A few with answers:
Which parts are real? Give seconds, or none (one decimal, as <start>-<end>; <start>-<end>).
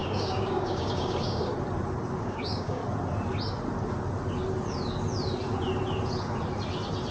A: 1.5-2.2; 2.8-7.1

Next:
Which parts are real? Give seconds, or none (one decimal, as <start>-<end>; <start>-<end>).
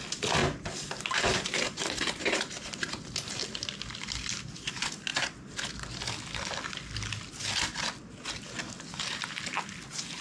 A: 0.0-0.4; 3.3-10.2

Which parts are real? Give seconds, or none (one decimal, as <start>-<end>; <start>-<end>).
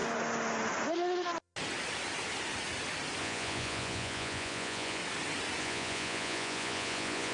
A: 0.0-3.2; 5.0-5.6